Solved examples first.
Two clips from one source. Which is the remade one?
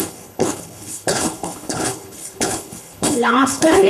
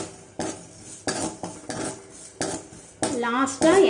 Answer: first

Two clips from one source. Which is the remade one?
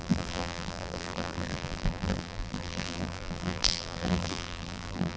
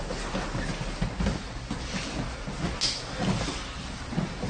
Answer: first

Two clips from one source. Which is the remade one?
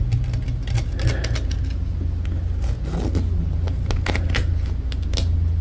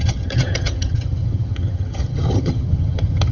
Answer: second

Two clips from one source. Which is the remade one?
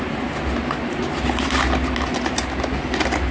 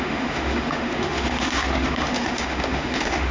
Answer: second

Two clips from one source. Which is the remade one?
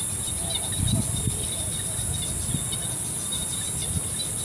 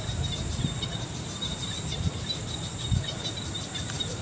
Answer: second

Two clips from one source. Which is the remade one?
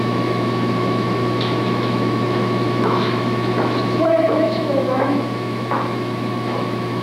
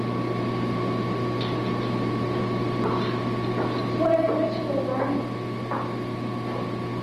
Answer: first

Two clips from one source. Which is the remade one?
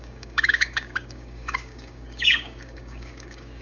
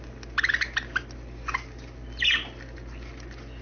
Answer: first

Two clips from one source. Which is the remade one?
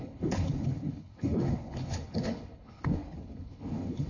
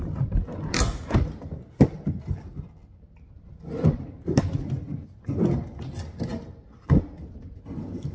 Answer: first